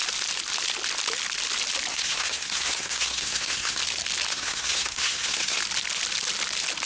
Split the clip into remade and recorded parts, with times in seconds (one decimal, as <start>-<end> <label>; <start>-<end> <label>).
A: 0.0-1.9 recorded; 1.9-3.8 remade; 3.8-4.3 recorded; 4.3-5.6 remade; 5.6-6.9 recorded